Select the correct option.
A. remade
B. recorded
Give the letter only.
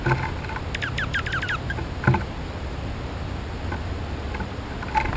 B